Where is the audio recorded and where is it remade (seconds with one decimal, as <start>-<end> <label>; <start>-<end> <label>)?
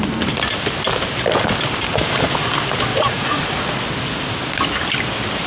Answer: 0.0-2.9 recorded; 2.9-3.6 remade; 3.6-5.5 recorded